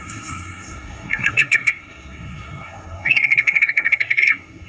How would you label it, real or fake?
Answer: fake